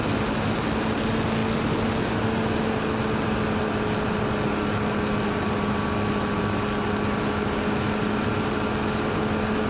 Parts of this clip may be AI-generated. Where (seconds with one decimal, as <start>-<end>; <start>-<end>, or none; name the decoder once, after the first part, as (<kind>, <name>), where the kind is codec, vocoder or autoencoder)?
none